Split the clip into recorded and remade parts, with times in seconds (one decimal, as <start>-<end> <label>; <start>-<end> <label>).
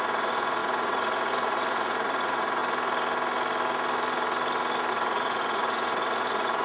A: 0.0-2.6 remade; 2.6-4.9 recorded; 4.9-6.6 remade